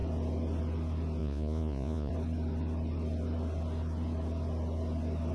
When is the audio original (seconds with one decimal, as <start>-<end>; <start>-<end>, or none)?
0.0-1.2; 2.1-5.3

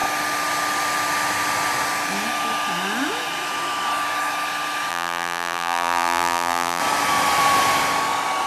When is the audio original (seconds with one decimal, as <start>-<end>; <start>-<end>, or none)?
0.0-4.9; 6.8-8.5

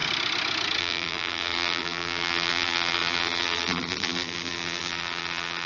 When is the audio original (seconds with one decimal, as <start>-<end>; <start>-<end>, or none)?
0.0-0.8

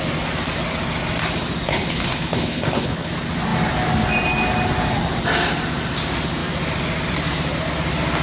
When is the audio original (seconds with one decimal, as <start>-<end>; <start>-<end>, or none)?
0.0-1.7; 3.1-8.2

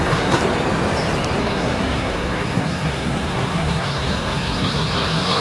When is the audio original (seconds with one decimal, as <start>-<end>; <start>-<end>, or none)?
0.4-1.4

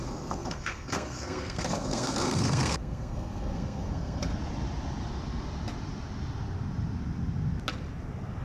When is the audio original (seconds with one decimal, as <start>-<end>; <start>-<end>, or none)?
4.3-8.4

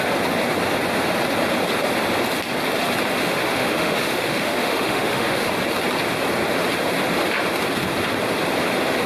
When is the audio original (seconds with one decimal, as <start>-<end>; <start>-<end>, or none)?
0.0-3.2; 5.5-9.1

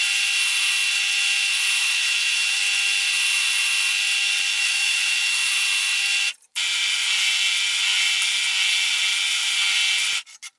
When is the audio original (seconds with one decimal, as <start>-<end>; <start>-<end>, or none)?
0.0-1.8; 2.6-4.5; 5.5-10.6